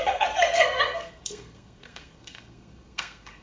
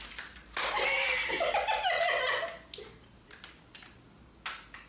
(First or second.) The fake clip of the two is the first